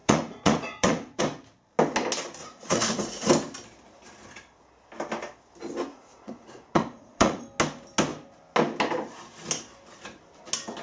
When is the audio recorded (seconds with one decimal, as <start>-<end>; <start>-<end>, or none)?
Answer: 1.2-2.4; 3.3-5.9; 7.4-10.8